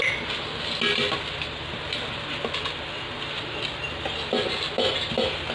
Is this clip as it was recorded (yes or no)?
yes